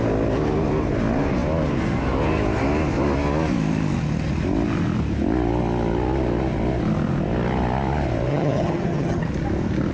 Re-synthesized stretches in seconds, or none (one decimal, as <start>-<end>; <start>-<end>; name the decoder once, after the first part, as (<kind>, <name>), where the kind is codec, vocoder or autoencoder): 8.3-9.2 (vocoder, HiFi-GAN)